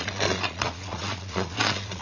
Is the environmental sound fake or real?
fake